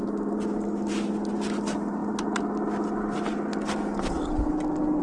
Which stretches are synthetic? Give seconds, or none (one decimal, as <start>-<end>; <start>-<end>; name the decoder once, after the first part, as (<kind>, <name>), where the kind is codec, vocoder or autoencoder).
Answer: none